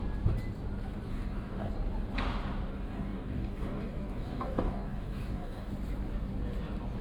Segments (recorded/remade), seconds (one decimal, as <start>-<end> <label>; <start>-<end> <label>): 0.0-1.1 recorded; 1.1-1.7 remade; 1.7-2.7 recorded; 2.7-5.7 remade; 5.7-7.0 recorded

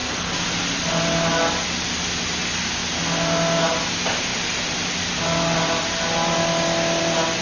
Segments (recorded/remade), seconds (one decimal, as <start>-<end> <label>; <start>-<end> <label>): 0.0-7.4 recorded